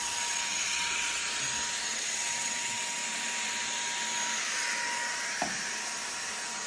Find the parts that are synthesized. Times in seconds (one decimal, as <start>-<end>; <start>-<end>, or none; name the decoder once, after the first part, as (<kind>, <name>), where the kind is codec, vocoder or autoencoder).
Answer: 0.0-1.2 (vocoder, WaveNeXt); 1.8-3.0